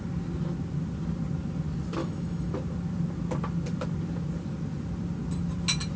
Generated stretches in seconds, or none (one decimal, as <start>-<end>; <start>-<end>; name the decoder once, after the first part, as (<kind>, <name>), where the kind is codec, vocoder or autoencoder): 2.0-2.5 (autoencoder, DAC-VAE)

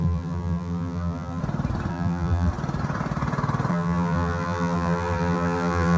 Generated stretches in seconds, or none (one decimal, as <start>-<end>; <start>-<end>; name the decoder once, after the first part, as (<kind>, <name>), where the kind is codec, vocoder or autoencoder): 0.0-1.4 (vocoder, BigVGAN v2); 1.9-2.5; 3.7-6.0